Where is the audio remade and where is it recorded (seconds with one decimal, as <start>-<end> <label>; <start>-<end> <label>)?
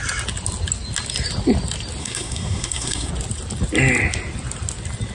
0.0-2.0 recorded; 2.0-3.1 remade; 3.1-5.1 recorded